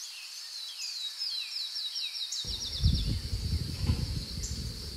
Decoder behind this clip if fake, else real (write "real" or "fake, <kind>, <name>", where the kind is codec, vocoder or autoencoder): fake, vocoder, BigVGAN v2